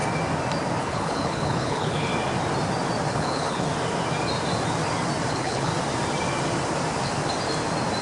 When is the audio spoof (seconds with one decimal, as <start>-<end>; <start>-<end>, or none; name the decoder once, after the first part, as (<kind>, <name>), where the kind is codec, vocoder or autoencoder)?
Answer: 0.8-2.1 (codec, HILCodec); 3.1-3.7; 5.3-5.7